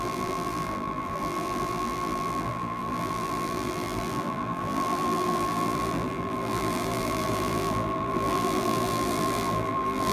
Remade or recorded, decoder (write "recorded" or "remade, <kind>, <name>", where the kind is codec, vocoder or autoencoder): remade, vocoder, BigVGAN v2